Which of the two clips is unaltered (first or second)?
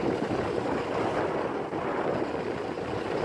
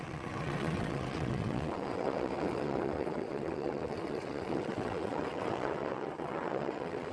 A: first